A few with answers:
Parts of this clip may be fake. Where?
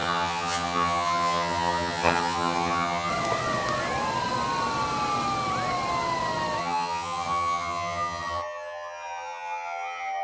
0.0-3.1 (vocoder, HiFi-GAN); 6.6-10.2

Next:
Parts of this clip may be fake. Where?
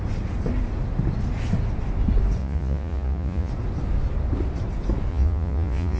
2.4-3.5 (vocoder, Vocos); 5.1-6.0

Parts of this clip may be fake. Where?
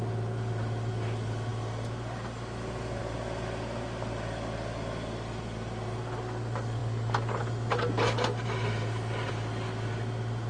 none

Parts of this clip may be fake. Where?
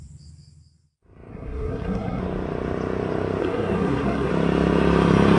1.3-2.2 (codec, SNAC); 3.4-4.3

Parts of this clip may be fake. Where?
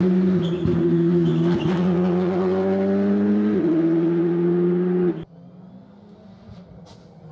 none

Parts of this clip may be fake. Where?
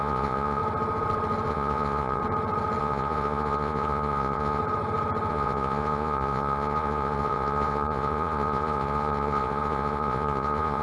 0.0-0.6 (vocoder, Vocos); 1.5-2.2; 2.8-4.6; 5.3-10.8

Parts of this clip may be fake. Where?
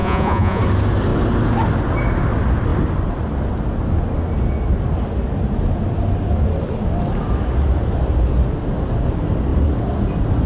0.0-0.6 (vocoder, Vocos)